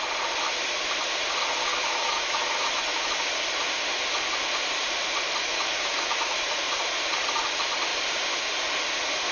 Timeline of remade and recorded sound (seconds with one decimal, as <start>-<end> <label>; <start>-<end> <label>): 0.0-1.7 recorded; 1.7-3.1 remade; 3.1-5.4 recorded; 5.4-6.5 remade; 6.5-9.3 recorded